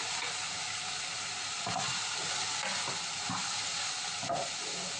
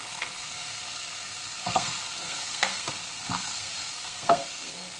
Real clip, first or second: first